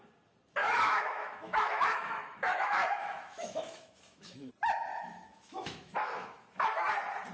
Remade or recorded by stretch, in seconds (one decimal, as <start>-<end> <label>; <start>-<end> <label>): 0.0-0.6 recorded; 0.6-4.5 remade; 4.5-4.9 recorded; 4.9-6.8 remade; 6.8-7.3 recorded